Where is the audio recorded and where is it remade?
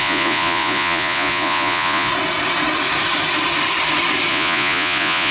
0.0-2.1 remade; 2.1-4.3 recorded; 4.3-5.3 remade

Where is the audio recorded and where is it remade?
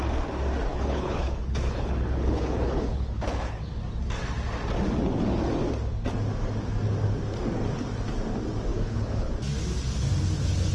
0.0-0.7 recorded; 0.7-3.7 remade; 3.7-8.7 recorded; 8.7-9.3 remade; 9.3-10.7 recorded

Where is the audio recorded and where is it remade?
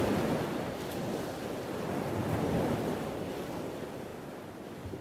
0.0-5.0 recorded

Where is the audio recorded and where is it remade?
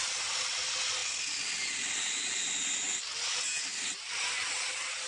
0.0-5.1 recorded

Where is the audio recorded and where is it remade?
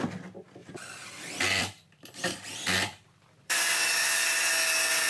0.0-0.6 recorded; 0.6-3.7 remade; 3.7-5.1 recorded